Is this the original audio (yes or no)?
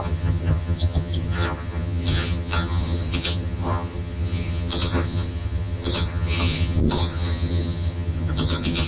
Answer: no